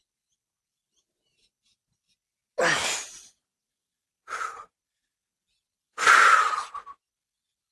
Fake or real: real